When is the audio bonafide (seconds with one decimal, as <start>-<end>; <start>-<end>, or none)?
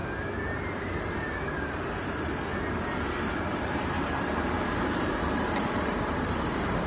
0.0-0.8; 2.5-3.3